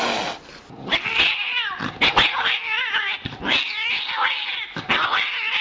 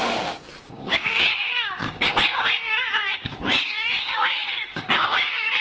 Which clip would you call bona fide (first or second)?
first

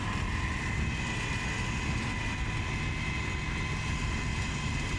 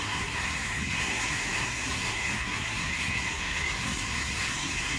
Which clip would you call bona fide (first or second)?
first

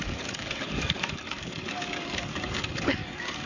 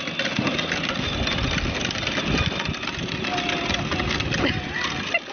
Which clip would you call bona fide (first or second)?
second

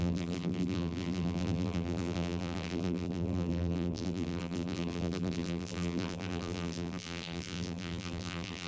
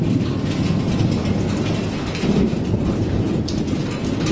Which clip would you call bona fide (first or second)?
second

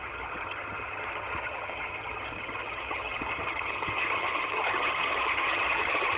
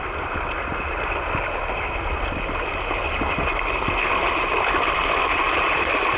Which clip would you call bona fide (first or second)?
second